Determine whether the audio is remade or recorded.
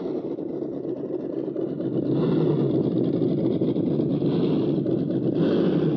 recorded